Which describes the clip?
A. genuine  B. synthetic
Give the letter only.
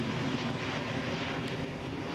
A